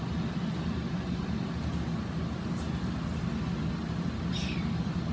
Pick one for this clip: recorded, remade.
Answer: recorded